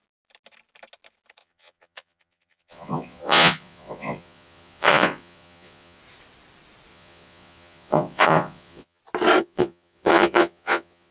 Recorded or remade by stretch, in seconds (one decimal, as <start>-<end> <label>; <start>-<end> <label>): 0.0-1.4 recorded; 1.4-6.0 remade; 6.0-6.9 recorded; 6.9-9.0 remade; 9.0-9.4 recorded; 9.4-11.1 remade